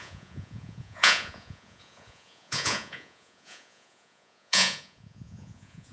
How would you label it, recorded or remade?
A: remade